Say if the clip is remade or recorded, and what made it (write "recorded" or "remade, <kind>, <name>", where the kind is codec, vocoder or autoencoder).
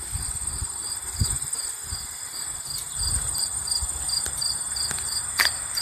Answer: recorded